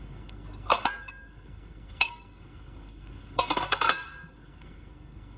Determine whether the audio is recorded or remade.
remade